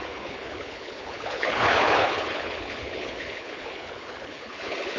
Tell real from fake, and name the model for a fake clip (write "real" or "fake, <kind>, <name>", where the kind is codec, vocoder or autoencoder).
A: fake, codec, HILCodec